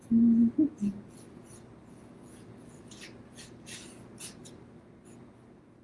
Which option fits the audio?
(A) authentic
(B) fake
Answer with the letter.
A